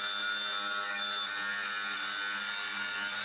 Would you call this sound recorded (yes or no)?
yes